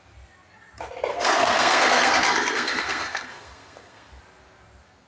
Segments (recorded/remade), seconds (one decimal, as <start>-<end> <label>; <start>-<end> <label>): 0.0-1.1 recorded; 1.1-4.2 remade; 4.2-5.1 recorded